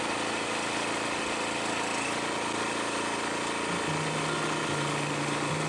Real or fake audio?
real